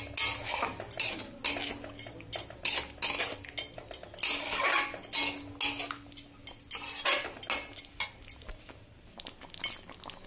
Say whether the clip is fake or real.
real